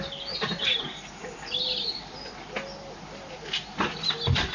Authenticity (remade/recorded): recorded